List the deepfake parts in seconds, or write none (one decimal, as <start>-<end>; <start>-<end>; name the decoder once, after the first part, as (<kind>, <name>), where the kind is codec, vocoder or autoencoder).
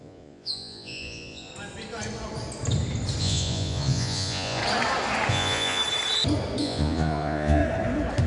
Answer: 0.0-1.5 (vocoder, Vocos); 3.2-4.6; 5.3-5.8; 6.6-7.6